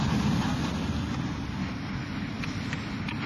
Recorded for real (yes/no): yes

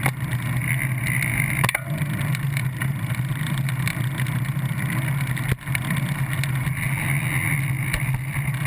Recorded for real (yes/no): yes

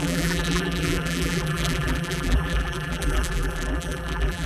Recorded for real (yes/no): no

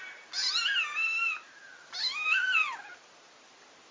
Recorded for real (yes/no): yes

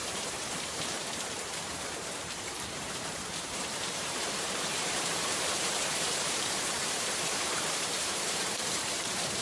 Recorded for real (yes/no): no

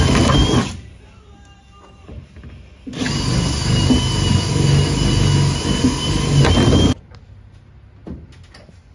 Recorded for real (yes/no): yes